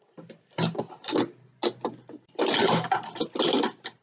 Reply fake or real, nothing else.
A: real